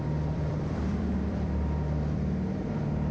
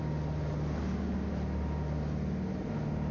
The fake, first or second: first